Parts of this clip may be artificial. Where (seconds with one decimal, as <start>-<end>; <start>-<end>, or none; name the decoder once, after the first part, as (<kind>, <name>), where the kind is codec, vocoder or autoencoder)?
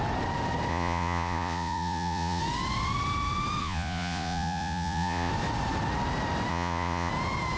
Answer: 0.7-2.4 (vocoder, Vocos); 3.6-5.3; 6.5-7.1